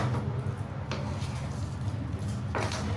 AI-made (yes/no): no